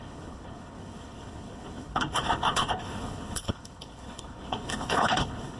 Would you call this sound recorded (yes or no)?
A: no